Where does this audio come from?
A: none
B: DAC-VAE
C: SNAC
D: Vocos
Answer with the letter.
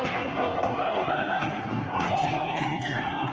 C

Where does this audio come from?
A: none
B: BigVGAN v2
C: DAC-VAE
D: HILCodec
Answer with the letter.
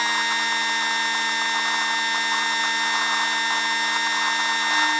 A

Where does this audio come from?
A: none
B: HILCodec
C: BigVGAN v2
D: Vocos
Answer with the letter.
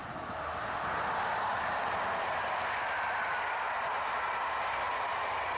A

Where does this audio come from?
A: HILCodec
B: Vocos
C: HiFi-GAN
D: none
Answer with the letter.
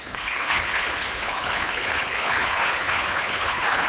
A